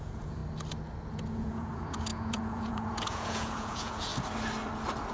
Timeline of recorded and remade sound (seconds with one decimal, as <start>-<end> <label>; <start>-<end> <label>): 0.0-0.4 remade; 0.4-1.1 recorded; 1.1-4.1 remade; 4.1-5.1 recorded